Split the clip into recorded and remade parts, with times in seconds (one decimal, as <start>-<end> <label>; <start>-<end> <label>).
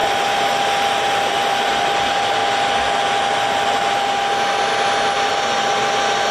0.0-6.3 recorded